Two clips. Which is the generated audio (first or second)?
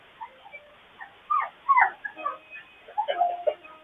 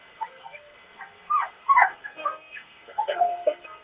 second